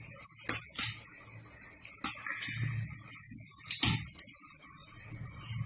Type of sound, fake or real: real